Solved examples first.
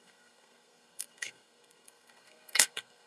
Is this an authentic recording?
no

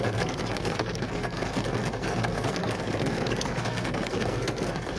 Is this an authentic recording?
no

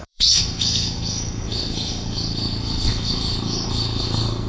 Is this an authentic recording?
no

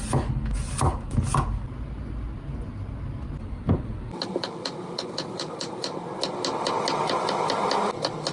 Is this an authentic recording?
yes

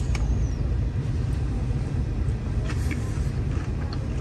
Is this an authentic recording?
yes